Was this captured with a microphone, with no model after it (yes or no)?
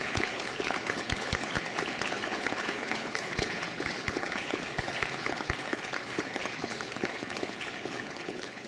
no